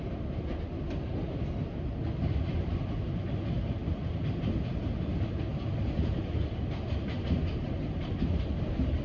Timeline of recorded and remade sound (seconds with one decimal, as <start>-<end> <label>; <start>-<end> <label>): 0.0-9.0 recorded